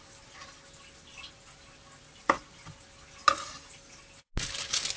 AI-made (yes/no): no